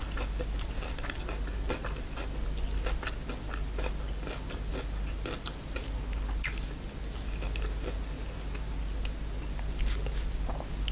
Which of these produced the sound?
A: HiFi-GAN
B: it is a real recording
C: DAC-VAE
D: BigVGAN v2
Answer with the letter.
B